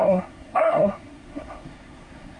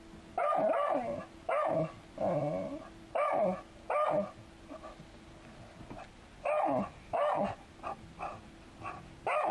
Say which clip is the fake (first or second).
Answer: first